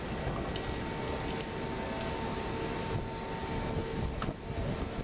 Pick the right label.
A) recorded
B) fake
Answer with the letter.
A